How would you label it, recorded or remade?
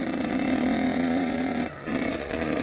remade